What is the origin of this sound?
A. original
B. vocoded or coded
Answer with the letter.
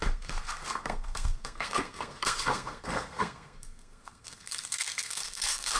B